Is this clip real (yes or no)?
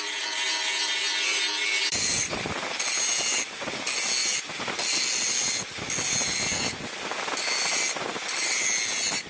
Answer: yes